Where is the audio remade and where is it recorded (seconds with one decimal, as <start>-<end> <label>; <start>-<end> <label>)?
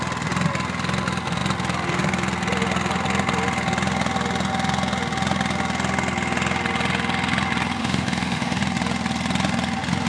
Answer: 0.0-7.8 recorded; 7.8-8.6 remade; 8.6-10.1 recorded